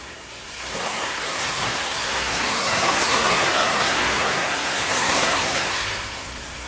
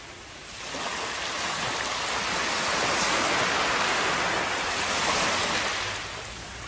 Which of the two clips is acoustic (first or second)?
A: second